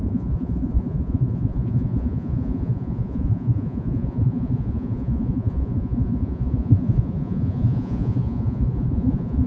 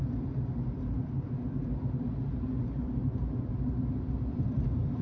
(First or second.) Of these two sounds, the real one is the second